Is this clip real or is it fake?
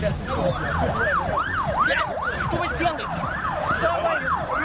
real